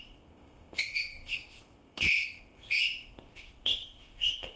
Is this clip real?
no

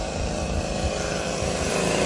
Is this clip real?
no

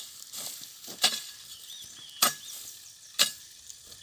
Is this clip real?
yes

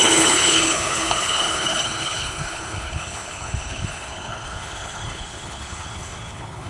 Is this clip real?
no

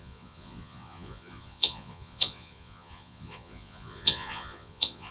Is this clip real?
no